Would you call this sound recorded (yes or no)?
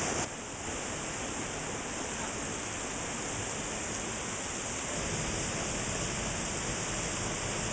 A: yes